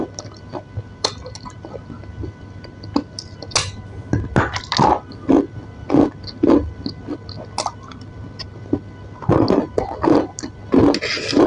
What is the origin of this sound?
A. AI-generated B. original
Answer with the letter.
B